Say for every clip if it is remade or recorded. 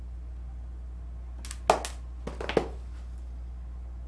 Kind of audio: recorded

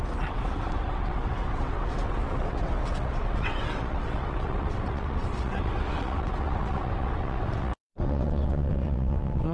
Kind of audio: remade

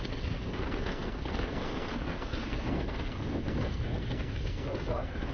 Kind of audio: remade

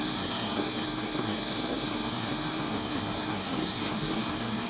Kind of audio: remade